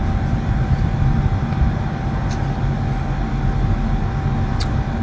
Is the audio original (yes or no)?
yes